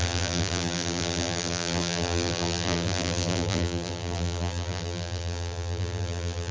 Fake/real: fake